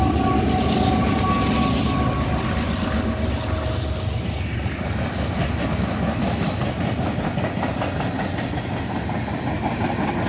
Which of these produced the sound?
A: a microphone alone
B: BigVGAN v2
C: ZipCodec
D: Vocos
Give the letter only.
A